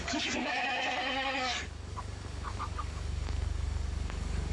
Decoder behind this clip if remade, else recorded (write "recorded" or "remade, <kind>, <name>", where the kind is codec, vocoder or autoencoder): remade, codec, DAC